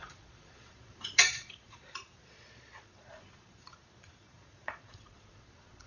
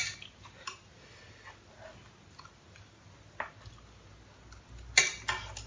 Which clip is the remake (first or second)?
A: first